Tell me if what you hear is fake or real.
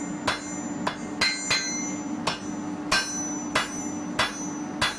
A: real